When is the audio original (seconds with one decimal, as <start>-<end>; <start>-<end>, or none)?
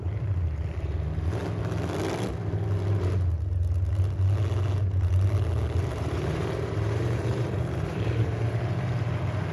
1.4-5.8